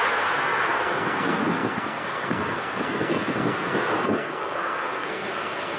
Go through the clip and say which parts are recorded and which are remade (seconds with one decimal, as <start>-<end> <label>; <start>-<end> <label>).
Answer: 0.0-5.8 remade